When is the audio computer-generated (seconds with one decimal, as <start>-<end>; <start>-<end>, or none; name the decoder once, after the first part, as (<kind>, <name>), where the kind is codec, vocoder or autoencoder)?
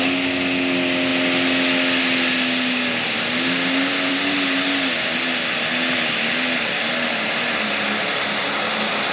none